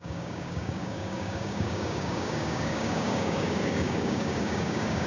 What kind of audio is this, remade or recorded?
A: remade